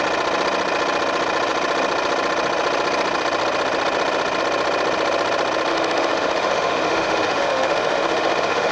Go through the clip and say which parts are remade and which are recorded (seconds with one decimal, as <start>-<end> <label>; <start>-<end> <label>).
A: 0.0-5.7 recorded; 5.7-8.7 remade